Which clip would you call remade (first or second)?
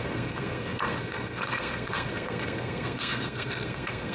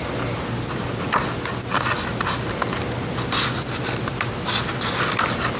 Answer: first